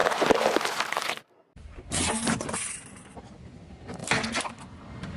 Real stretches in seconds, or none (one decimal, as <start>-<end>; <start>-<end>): 0.0-5.2